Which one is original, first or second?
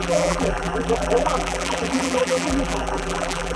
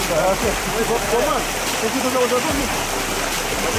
second